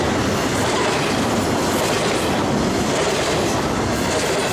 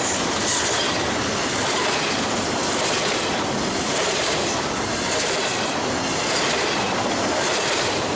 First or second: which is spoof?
second